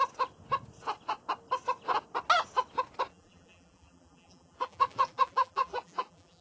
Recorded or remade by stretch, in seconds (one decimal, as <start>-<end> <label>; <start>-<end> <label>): 0.0-3.1 recorded; 3.1-6.4 remade